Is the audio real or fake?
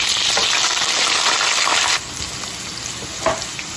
real